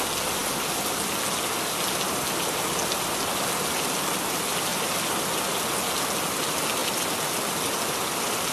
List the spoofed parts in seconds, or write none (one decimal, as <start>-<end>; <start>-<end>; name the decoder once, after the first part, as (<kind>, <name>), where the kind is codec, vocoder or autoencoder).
none